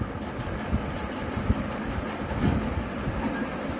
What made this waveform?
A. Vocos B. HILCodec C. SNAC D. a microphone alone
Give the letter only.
D